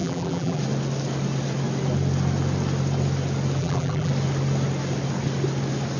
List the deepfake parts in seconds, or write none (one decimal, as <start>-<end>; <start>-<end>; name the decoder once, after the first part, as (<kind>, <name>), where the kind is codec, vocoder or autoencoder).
0.0-0.6 (vocoder, BigVGAN v2); 3.6-4.1